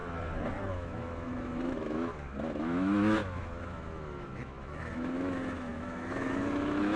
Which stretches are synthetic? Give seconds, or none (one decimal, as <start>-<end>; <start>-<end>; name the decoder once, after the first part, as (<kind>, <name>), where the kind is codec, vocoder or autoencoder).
0.7-7.0 (autoencoder, DAC-VAE)